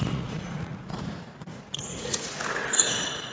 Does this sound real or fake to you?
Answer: fake